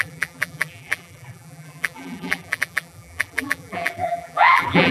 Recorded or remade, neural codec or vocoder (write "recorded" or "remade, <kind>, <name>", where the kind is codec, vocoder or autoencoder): remade, vocoder, BigVGAN v2